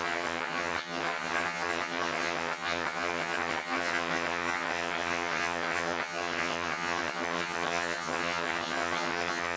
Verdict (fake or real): fake